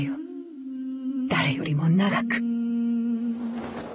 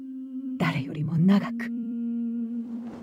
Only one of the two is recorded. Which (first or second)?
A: first